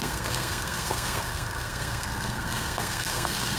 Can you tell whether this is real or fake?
fake